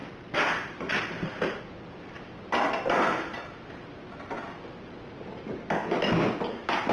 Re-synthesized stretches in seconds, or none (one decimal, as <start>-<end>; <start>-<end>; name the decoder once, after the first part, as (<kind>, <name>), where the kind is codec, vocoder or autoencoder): none